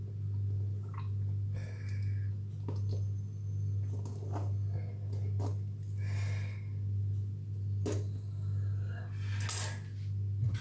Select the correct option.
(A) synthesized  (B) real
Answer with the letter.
B